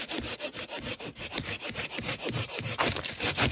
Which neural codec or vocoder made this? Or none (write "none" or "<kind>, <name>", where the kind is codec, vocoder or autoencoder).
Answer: vocoder, BigVGAN v2